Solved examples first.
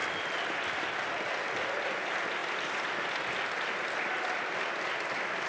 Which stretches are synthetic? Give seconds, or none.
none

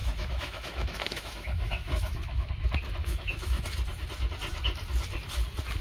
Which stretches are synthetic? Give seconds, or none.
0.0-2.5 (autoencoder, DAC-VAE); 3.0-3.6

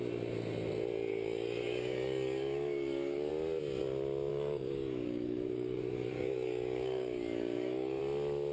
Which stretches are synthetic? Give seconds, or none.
1.1-3.3 (codec, DAC); 4.3-8.0